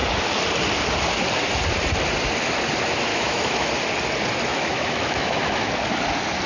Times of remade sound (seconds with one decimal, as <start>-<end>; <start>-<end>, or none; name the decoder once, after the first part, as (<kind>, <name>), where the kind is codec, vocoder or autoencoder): 3.1-3.7 (autoencoder, DAC-VAE); 4.5-5.7